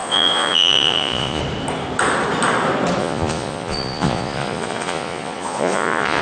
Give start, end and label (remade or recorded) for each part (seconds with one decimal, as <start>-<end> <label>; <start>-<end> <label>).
0.0-1.4 remade; 1.4-3.0 recorded; 3.0-6.2 remade